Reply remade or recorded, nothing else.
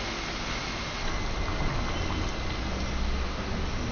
recorded